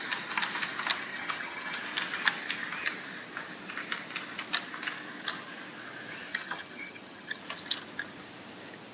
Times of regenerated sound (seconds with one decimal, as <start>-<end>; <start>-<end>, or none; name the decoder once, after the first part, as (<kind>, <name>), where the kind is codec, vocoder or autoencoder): 1.1-1.8 (vocoder, HiFi-GAN); 6.3-7.4